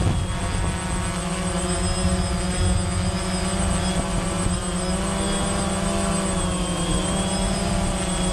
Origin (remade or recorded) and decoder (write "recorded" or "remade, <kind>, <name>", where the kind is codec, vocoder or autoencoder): recorded